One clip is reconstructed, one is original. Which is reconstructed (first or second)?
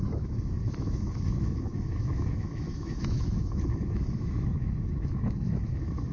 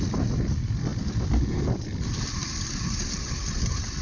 first